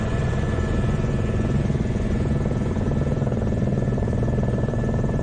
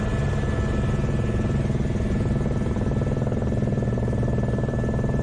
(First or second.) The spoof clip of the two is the first